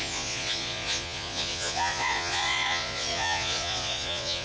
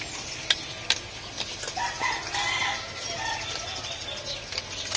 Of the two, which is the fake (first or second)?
first